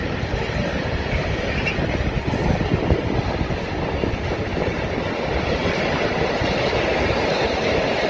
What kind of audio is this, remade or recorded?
recorded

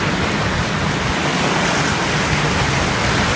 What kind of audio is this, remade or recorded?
recorded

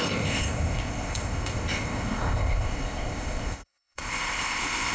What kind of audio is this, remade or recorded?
remade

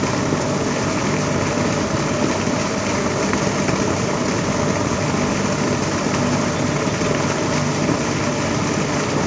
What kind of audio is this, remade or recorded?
recorded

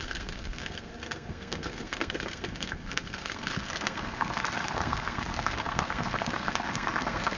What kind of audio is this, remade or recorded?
remade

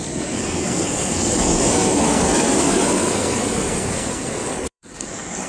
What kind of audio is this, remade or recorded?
remade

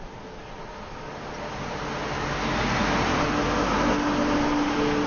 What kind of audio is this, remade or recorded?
recorded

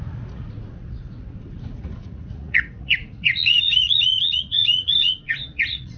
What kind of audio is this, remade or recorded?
remade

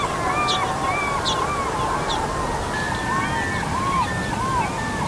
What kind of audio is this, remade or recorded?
recorded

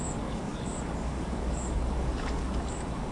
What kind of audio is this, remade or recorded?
remade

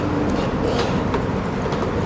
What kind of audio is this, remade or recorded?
recorded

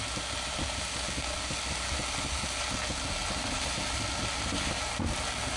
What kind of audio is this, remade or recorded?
recorded